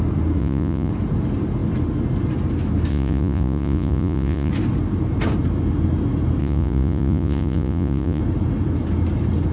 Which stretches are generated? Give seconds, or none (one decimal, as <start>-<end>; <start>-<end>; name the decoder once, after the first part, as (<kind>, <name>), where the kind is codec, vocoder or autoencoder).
0.4-0.9 (vocoder, Vocos); 2.9-4.5; 6.4-8.2